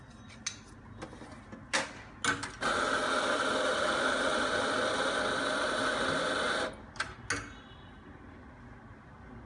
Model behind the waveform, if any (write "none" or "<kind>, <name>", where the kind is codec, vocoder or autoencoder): none